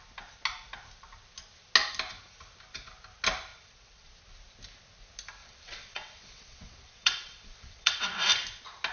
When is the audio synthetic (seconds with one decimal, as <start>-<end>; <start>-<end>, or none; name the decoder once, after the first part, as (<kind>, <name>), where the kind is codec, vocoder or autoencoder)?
3.5-4.1 (vocoder, WaveNeXt); 5.4-8.3